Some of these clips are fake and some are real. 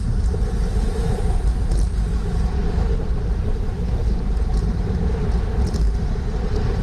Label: fake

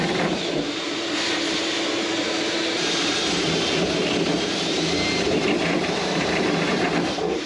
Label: fake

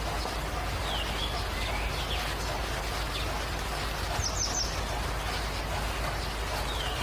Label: real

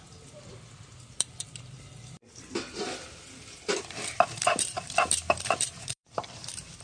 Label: fake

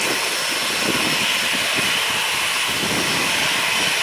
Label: real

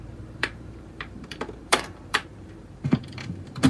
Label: fake